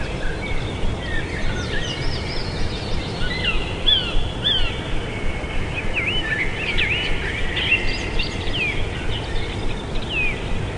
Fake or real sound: real